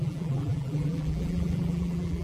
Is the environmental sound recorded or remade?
remade